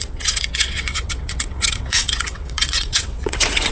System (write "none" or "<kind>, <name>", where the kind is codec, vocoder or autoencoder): vocoder, WaveNeXt